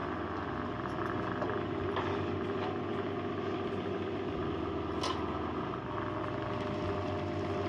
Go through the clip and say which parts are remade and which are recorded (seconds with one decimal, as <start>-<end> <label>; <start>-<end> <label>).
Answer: 0.0-1.7 remade; 1.7-7.7 recorded